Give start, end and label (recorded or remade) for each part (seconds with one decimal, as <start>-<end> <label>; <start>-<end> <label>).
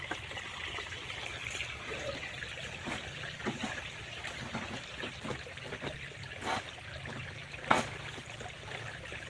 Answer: 0.0-9.3 recorded